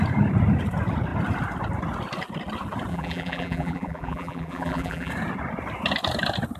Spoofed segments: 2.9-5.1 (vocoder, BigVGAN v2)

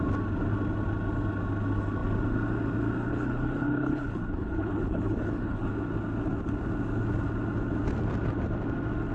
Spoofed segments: 3.1-5.7 (codec, HILCodec)

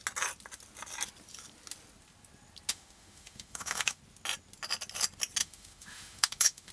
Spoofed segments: 2.7-4.0 (autoencoder, DAC-VAE); 5.4-6.7